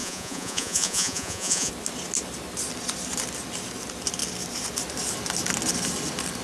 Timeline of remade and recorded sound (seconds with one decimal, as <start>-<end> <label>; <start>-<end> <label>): 0.0-1.7 remade; 1.7-6.4 recorded